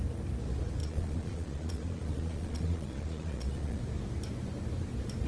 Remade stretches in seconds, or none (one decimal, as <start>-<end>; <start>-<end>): 0.8-3.8